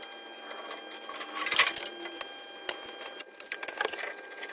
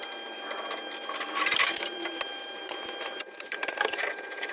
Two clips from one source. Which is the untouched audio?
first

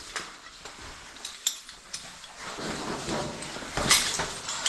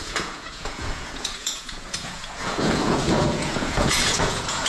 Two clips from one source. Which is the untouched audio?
first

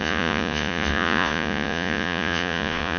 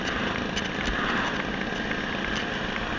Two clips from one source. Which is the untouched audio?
second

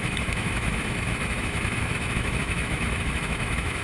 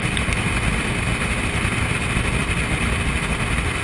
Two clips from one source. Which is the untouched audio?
second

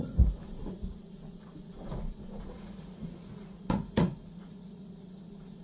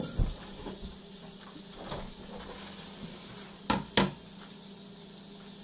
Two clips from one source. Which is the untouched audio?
second